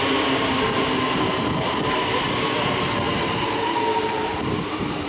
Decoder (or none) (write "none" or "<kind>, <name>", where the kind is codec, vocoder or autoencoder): none